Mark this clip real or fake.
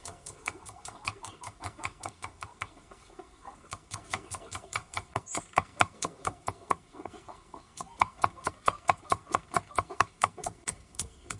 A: fake